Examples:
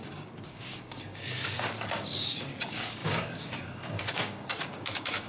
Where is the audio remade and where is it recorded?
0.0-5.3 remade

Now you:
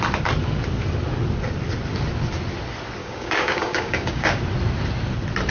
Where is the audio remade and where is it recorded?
0.0-3.0 recorded; 3.0-4.4 remade; 4.4-5.5 recorded

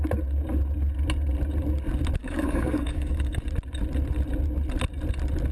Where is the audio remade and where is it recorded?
0.0-2.2 recorded; 2.2-3.4 remade; 3.4-5.5 recorded

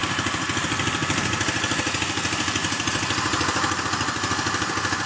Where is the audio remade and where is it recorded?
0.0-5.1 recorded

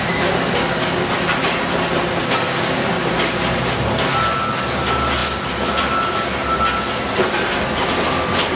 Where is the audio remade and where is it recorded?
0.0-8.6 recorded